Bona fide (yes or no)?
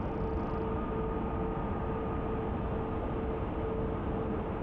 yes